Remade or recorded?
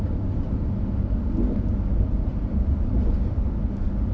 recorded